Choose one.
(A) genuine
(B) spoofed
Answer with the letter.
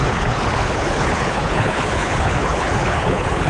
B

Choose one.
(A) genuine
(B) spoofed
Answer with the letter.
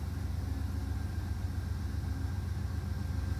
A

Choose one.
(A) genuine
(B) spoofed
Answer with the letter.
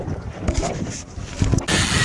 A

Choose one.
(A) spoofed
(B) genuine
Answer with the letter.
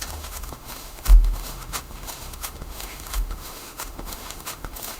A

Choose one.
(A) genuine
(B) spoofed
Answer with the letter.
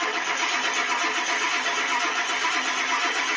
A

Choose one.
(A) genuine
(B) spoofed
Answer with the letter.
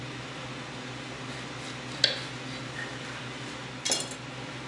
A